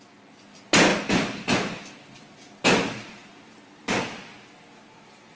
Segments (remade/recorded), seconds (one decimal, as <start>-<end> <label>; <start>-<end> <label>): 0.0-5.4 recorded